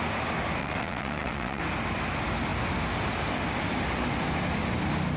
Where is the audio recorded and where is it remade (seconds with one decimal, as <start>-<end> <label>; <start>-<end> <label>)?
0.0-0.6 recorded; 0.6-1.6 remade; 1.6-5.2 recorded